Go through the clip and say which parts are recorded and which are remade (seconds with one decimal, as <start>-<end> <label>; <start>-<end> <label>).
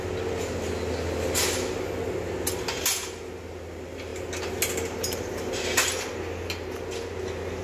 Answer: 0.0-7.6 recorded